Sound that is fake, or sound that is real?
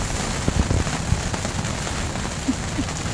real